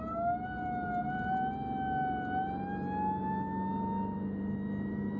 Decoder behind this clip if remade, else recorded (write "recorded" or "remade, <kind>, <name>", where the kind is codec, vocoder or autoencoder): recorded